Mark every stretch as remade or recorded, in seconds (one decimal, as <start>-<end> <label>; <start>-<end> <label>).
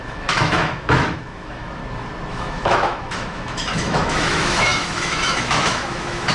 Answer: 0.0-1.8 remade; 1.8-2.3 recorded; 2.3-6.3 remade